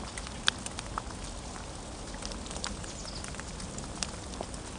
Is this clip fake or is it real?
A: real